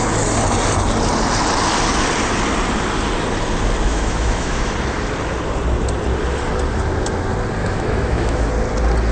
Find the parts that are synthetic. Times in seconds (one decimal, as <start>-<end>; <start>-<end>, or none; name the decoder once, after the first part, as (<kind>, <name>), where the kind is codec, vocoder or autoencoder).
3.9-4.7 (autoencoder, DAC-VAE); 7.6-8.5